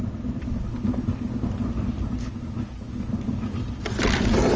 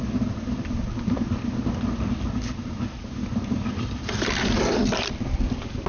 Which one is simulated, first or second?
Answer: second